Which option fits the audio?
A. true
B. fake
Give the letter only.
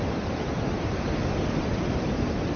A